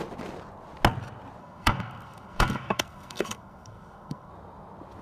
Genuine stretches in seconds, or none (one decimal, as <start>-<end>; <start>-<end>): 0.0-1.4; 4.3-5.0